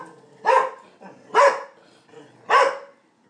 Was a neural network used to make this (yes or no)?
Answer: no